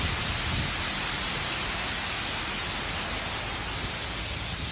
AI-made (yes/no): no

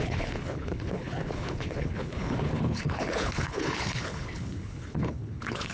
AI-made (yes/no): yes